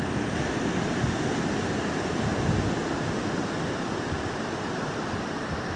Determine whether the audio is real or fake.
real